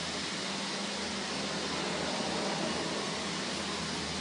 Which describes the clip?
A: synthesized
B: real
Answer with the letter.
B